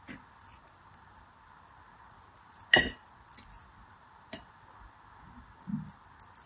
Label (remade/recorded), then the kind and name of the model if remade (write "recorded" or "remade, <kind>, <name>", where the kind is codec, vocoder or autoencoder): recorded